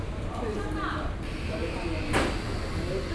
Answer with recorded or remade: recorded